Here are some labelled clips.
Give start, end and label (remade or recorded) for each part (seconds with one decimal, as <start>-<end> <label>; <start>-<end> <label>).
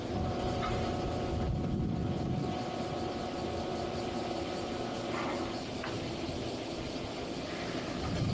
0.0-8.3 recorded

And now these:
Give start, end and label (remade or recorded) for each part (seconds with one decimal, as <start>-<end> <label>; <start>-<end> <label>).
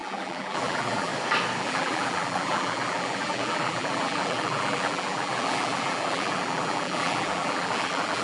0.0-1.1 remade; 1.1-1.6 recorded; 1.6-8.2 remade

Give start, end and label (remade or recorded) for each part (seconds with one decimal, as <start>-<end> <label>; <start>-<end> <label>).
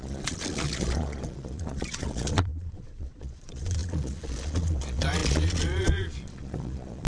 0.0-7.1 remade